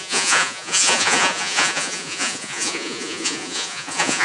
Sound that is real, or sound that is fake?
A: fake